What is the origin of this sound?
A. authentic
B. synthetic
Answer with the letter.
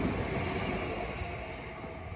A